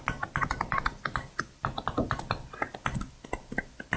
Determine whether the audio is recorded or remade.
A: recorded